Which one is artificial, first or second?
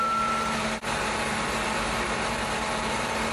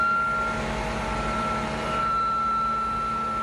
first